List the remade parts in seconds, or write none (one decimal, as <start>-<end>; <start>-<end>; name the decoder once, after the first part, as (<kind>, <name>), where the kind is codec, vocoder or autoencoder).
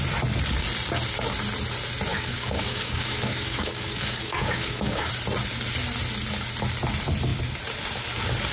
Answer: 2.1-5.1 (codec, DAC)